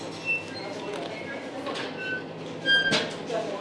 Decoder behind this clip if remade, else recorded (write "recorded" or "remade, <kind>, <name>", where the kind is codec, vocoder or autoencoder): recorded